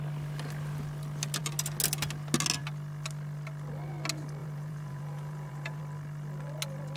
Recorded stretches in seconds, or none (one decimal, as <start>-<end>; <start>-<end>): 0.0-4.4; 5.8-7.0